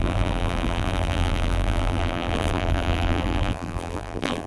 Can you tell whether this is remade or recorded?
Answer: remade